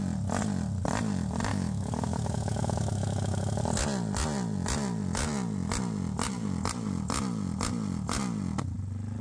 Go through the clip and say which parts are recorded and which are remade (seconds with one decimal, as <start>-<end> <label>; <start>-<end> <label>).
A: 0.0-1.5 recorded; 1.5-3.6 remade; 3.6-9.2 recorded